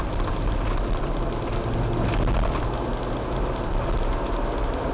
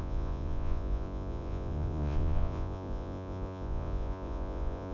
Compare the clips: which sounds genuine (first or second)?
first